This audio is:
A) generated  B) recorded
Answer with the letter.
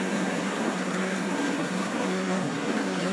A